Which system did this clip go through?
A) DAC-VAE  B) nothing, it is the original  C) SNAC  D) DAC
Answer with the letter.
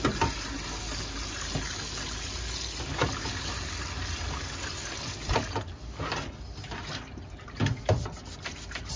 B